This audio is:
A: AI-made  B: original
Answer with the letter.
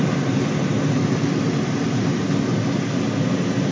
B